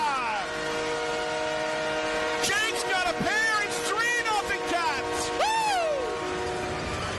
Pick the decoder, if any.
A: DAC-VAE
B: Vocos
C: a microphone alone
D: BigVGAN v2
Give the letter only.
C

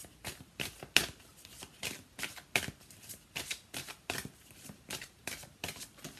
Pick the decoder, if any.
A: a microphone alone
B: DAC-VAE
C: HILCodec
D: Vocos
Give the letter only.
A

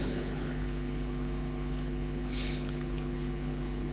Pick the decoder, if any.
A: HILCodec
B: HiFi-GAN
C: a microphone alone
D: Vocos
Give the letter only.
A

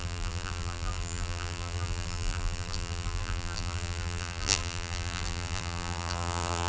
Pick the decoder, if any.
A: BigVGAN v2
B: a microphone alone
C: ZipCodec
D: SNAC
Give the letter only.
A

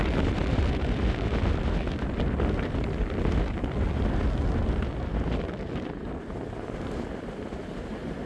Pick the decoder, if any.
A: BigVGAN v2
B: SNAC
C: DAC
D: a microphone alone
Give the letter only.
D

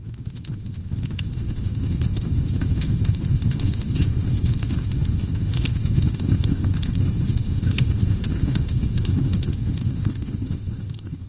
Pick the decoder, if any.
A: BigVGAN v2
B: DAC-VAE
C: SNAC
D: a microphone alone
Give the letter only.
B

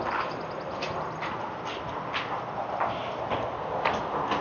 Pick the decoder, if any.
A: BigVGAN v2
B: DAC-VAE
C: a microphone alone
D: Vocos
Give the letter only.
C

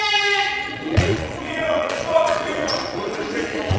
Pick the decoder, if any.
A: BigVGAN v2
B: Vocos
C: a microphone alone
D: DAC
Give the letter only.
B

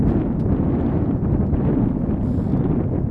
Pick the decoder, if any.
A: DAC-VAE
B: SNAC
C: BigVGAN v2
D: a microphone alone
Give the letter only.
D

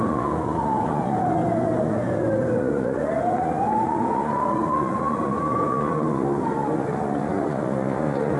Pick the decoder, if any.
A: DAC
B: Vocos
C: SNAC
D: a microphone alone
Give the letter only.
B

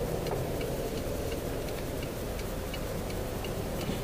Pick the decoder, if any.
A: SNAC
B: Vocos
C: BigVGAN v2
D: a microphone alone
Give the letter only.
C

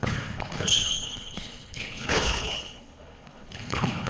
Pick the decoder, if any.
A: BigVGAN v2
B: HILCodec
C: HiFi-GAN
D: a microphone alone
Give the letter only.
B